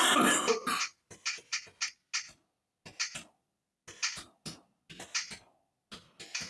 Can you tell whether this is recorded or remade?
recorded